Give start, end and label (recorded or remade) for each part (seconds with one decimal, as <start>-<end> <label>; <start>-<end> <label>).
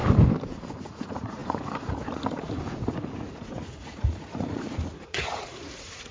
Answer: 0.0-0.7 recorded; 0.7-6.1 remade